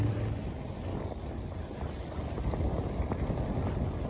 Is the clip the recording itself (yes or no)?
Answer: yes